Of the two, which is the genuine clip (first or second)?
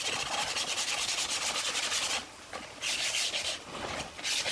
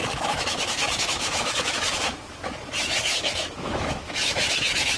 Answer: first